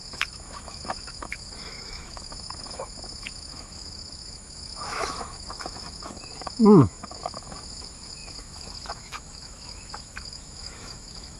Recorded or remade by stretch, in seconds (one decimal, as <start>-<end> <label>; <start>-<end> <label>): 0.0-11.4 remade